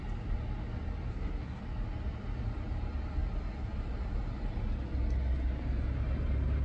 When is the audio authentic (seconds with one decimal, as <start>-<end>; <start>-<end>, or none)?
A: 0.0-1.1; 1.6-6.6